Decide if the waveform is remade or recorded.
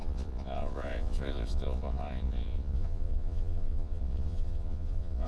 remade